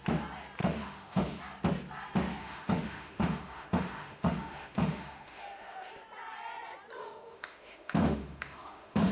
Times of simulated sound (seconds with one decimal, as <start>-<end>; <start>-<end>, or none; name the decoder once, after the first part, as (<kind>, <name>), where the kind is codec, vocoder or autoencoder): 0.6-1.4 (autoencoder, DAC-VAE); 2.4-5.9; 7.0-9.1